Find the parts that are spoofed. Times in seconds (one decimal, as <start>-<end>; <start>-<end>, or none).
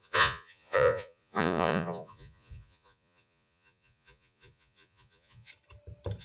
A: 0.0-5.5